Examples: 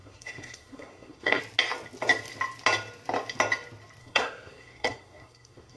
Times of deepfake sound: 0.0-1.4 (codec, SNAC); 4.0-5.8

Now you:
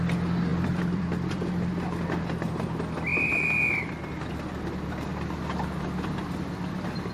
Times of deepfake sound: 0.5-1.5 (vocoder, BigVGAN v2)

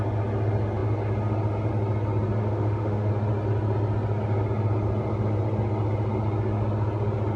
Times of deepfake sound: 2.4-3.1 (autoencoder, DAC-VAE)

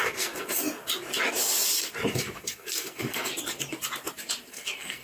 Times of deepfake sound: 0.0-0.6 (codec, SNAC); 2.1-3.3; 4.5-5.0

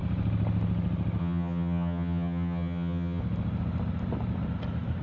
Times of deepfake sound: 1.2-3.2 (vocoder, HiFi-GAN)

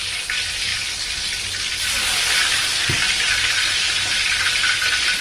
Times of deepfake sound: 2.6-4.7 (vocoder, BigVGAN v2)

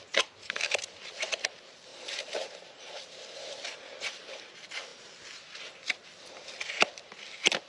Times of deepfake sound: 0.0-4.9 (vocoder, BigVGAN v2)